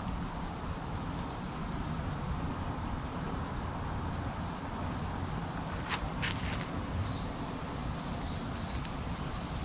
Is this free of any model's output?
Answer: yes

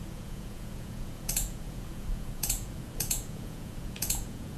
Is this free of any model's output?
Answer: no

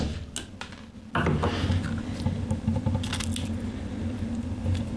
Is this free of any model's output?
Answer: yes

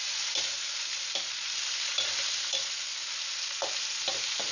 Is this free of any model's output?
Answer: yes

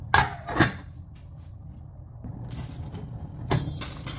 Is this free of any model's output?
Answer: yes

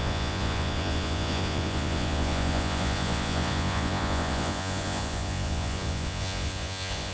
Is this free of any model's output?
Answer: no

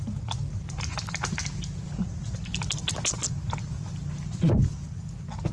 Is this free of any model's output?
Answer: yes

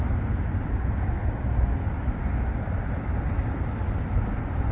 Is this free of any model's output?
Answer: yes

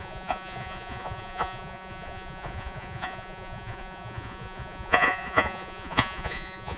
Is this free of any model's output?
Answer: no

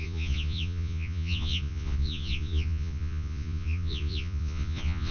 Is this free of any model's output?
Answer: no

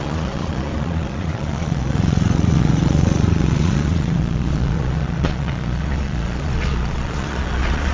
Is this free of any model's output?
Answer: no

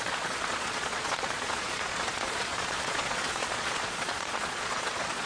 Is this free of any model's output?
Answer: no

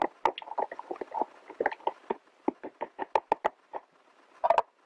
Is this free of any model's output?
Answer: yes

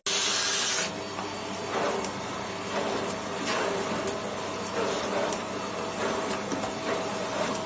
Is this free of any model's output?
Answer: yes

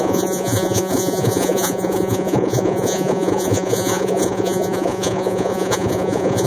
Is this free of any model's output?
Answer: no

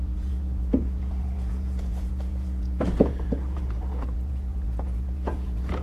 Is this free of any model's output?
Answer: no